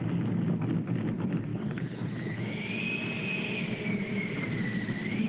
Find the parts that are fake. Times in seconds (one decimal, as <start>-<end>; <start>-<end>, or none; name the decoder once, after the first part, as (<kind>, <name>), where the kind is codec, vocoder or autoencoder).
1.5-2.4 (codec, HILCodec)